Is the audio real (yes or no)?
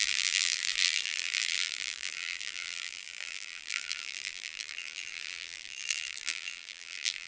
no